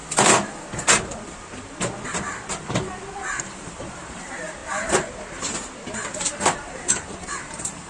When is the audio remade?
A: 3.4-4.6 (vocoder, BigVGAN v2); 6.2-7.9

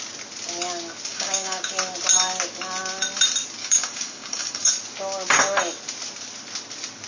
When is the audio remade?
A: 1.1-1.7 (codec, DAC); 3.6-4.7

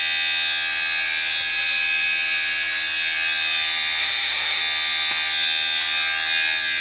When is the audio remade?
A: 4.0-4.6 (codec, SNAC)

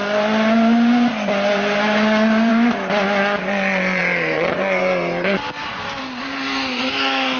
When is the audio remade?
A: 1.8-2.5 (codec, DAC)

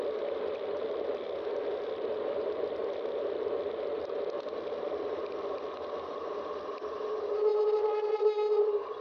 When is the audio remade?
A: none

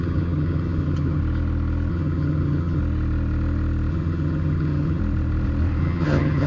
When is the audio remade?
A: 0.0-1.2 (vocoder, HiFi-GAN); 1.9-2.8; 3.9-5.0; 5.8-6.5

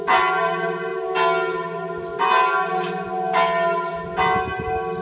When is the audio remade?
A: none